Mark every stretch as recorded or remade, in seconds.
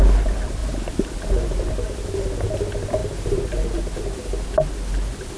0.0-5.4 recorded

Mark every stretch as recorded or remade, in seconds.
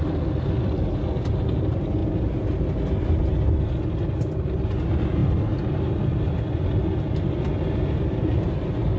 0.0-9.0 recorded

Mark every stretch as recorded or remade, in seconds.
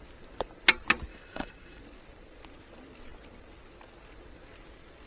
0.0-1.1 recorded; 1.1-1.8 remade; 1.8-5.1 recorded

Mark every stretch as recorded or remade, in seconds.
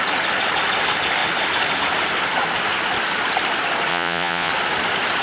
0.0-3.9 recorded; 3.9-4.5 remade; 4.5-5.2 recorded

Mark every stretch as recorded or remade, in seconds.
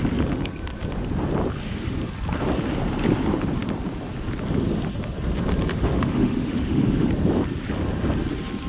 0.0-5.7 recorded; 5.7-7.1 remade; 7.1-8.7 recorded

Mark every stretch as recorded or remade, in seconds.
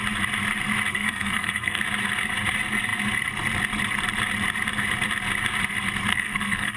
0.0-0.9 recorded; 0.9-1.8 remade; 1.8-6.1 recorded; 6.1-6.8 remade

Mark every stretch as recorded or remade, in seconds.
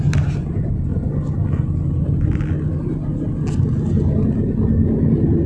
0.0-5.5 recorded